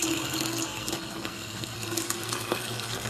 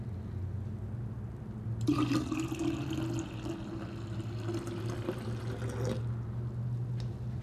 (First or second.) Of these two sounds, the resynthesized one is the first